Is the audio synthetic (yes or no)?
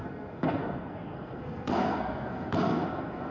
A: yes